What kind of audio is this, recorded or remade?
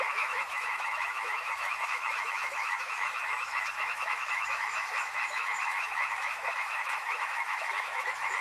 remade